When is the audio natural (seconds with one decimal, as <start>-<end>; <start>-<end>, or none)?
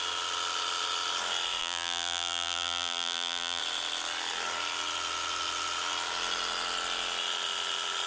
0.0-1.6; 3.6-8.1